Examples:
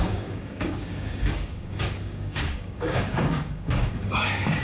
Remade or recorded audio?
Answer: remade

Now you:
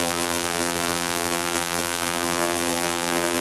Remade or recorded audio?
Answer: remade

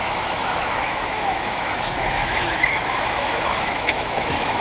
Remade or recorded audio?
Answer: remade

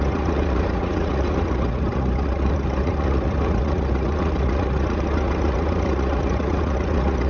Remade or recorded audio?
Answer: remade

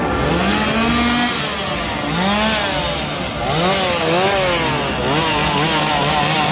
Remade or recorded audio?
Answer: recorded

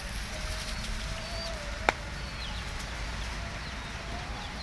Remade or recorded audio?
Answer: recorded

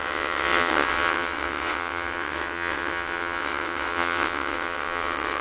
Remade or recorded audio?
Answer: remade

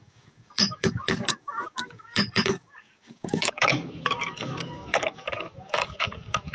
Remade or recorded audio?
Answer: remade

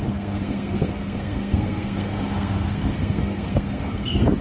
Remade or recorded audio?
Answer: remade